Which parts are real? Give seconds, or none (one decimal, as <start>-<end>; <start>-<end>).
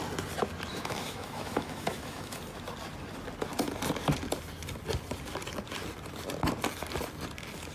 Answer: 0.0-0.7; 2.4-7.7